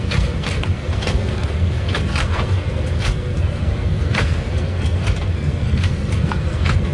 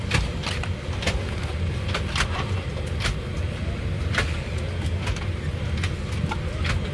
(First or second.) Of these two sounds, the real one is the second